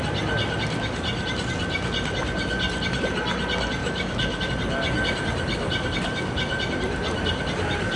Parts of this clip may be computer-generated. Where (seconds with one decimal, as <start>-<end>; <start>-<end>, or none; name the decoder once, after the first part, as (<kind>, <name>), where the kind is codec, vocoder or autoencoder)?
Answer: 3.8-4.5 (autoencoder, DAC-VAE)